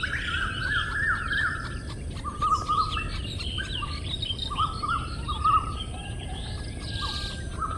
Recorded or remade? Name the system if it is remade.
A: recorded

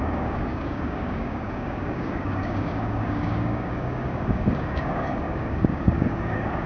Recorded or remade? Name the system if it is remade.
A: remade, codec, DAC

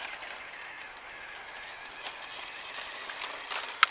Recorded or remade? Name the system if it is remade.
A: recorded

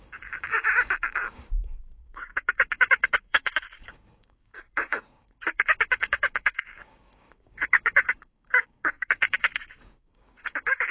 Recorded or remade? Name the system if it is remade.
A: remade, codec, DAC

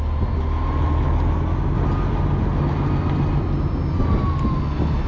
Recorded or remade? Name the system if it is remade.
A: recorded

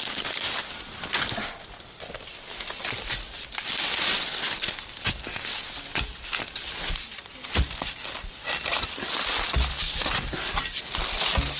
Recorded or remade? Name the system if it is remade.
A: recorded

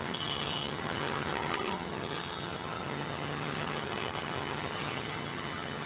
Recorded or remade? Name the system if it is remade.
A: remade, vocoder, HiFi-GAN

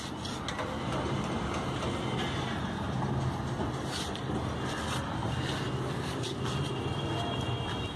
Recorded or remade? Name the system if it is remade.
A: recorded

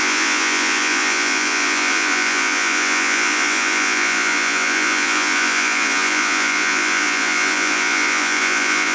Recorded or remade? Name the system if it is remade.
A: remade, vocoder, Vocos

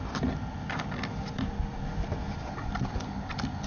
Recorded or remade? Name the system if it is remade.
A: recorded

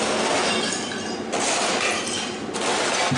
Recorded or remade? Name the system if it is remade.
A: recorded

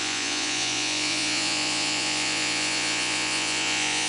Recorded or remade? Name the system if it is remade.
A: remade, vocoder, Vocos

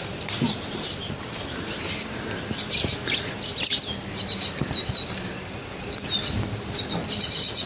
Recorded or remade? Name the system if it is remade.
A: remade, vocoder, BigVGAN v2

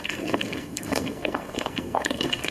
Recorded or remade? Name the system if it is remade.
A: remade, codec, SNAC